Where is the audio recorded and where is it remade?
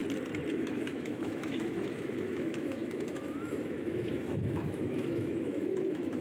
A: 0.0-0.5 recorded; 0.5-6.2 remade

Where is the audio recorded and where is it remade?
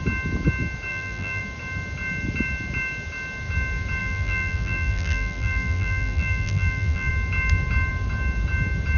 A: 0.0-0.9 recorded; 0.9-1.4 remade; 1.4-4.0 recorded; 4.0-7.1 remade; 7.1-9.0 recorded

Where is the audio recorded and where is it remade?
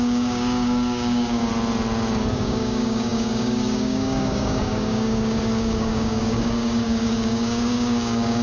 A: 0.0-1.5 remade; 1.5-2.3 recorded; 2.3-8.4 remade